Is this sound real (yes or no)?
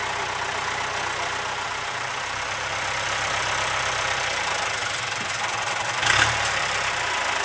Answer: yes